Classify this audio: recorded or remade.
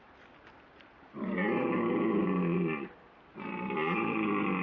recorded